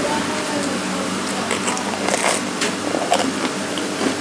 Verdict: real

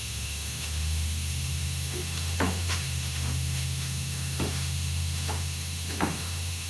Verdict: fake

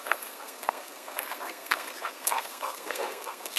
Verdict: fake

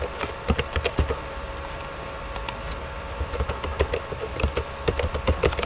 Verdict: fake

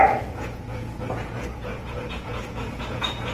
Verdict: fake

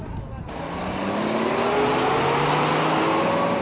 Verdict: real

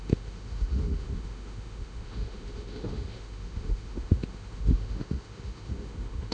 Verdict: fake